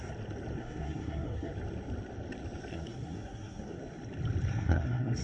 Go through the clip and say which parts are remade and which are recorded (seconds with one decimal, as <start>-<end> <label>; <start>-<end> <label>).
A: 0.0-0.6 recorded; 0.6-1.5 remade; 1.5-2.7 recorded; 2.7-3.8 remade; 3.8-4.5 recorded; 4.5-5.2 remade